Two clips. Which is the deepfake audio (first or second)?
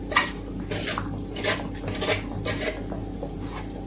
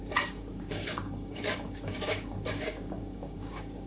second